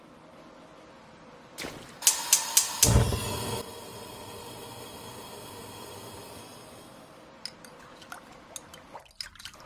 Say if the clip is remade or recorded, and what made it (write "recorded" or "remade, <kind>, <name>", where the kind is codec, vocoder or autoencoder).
recorded